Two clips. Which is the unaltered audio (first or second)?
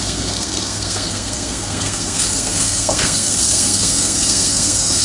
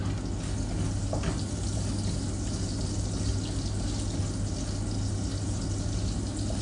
second